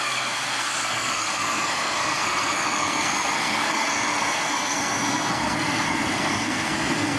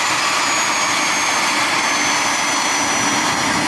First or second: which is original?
second